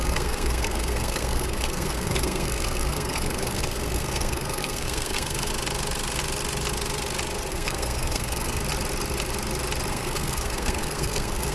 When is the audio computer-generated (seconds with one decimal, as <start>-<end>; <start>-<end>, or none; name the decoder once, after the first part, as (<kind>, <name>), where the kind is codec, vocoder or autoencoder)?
0.0-5.5 (codec, SNAC); 7.5-8.6; 9.9-11.5